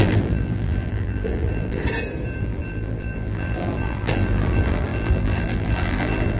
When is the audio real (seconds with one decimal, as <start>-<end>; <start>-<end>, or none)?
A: 1.8-2.4